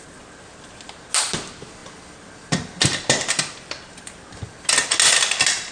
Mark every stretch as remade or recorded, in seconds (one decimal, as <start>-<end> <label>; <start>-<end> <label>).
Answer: 0.0-1.8 recorded; 1.8-4.4 remade; 4.4-5.7 recorded